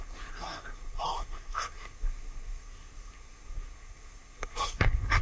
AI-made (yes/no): yes